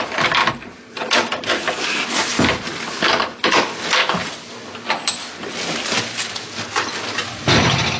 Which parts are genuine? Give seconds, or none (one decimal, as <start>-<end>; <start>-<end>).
0.0-0.4; 3.6-8.0